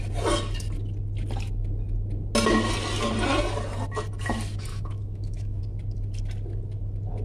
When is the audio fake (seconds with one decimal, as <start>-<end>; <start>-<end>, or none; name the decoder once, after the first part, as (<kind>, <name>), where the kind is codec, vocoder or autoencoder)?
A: 4.7-5.6 (autoencoder, DAC-VAE)